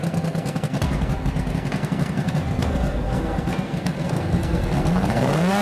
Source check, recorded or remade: remade